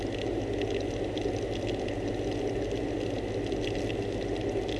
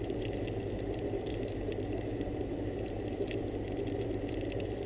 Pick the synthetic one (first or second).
second